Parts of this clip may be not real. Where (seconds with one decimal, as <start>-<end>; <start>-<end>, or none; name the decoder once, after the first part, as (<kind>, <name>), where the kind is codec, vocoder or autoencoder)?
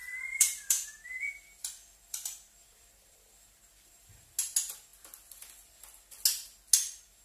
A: 0.0-4.3 (vocoder, BigVGAN v2)